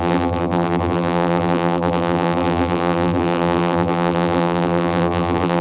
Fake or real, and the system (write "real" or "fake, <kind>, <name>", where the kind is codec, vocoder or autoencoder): fake, vocoder, BigVGAN v2